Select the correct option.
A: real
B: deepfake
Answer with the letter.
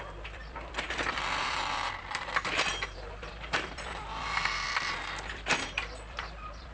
B